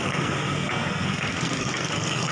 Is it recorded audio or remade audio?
remade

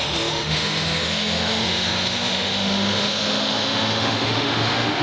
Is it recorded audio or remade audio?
remade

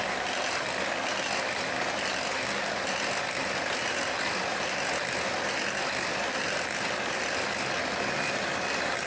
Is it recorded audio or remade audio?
recorded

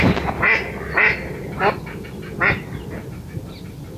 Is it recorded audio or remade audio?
recorded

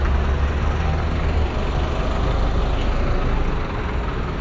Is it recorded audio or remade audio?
recorded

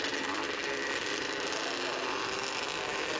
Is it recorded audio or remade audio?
recorded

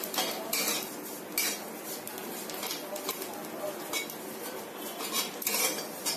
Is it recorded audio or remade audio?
recorded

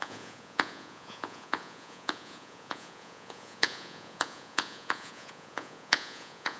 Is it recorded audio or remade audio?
remade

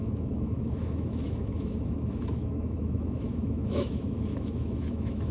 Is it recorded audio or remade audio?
remade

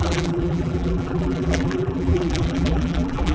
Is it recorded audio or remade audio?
remade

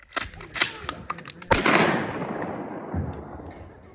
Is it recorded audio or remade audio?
recorded